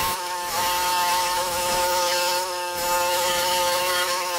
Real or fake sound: fake